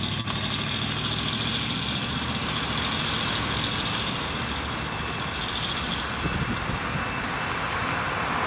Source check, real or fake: real